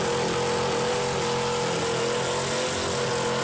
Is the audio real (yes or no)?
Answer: yes